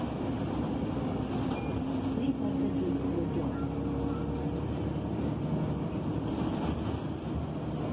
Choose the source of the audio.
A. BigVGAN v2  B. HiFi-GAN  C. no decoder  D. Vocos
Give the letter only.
C